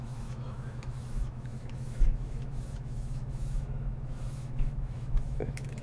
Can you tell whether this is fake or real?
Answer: fake